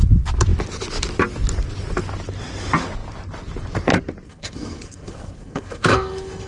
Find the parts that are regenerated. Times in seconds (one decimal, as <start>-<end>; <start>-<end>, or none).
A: 4.3-6.5